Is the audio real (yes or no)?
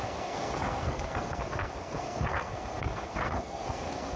no